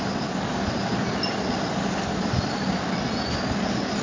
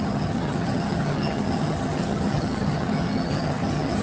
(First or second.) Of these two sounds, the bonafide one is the first